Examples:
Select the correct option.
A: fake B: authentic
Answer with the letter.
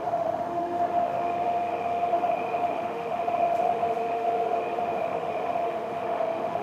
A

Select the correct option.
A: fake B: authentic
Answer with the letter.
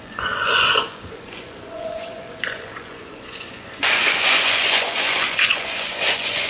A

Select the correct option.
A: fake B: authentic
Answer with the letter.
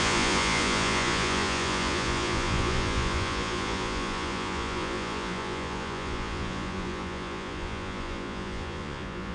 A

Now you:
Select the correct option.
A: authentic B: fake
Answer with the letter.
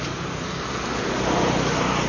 A